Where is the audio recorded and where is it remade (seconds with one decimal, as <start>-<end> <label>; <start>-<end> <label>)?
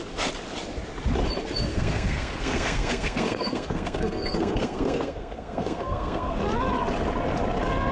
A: 0.0-1.7 recorded; 1.7-6.4 remade; 6.4-7.9 recorded